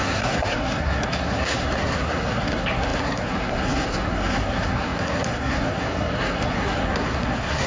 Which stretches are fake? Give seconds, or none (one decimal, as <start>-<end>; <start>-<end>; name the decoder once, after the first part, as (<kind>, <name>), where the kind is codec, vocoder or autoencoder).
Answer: 0.0-7.7 (codec, SNAC)